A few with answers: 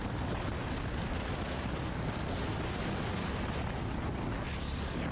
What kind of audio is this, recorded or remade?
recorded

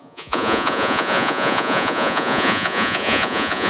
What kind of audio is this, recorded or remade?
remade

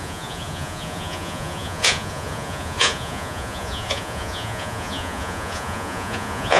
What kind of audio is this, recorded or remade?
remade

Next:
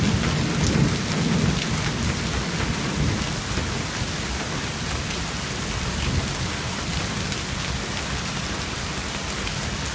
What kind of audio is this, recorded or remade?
recorded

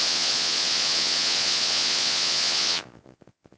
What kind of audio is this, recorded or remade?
remade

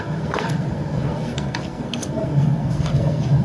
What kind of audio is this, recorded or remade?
remade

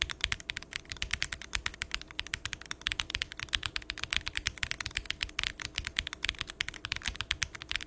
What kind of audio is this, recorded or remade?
recorded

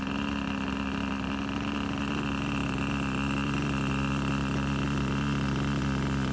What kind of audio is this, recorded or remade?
recorded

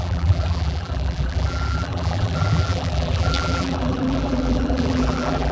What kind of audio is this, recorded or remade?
remade